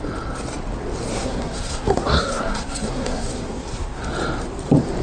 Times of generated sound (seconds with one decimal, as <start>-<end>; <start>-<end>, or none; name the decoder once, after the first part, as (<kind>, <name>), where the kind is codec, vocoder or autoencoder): 1.1-4.1 (codec, SNAC)